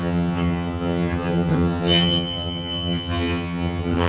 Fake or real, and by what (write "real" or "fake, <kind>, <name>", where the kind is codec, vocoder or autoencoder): fake, vocoder, HiFi-GAN